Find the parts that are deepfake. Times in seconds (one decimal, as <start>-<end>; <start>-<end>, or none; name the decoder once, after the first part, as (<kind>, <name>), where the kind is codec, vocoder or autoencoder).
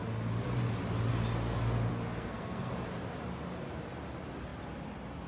1.9-2.7 (codec, SNAC)